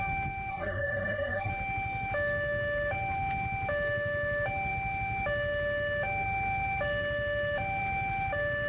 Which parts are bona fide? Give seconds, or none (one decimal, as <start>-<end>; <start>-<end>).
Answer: 0.0-0.5; 1.5-8.7